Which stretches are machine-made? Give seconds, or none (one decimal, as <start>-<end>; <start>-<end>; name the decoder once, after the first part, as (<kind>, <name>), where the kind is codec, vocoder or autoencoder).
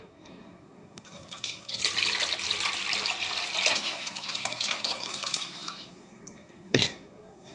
0.0-1.8 (codec, SNAC); 3.7-7.5